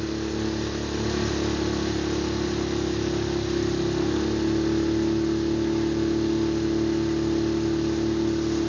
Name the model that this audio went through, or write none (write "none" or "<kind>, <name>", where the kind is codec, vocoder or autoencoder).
none